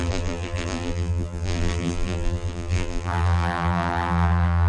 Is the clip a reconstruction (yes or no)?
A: yes